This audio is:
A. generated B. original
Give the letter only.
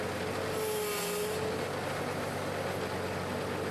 B